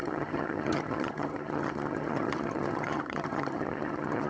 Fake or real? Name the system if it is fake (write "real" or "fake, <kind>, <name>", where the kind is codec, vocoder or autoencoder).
fake, vocoder, HiFi-GAN